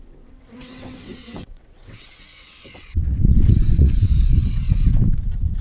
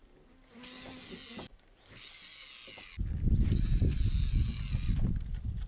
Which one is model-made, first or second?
first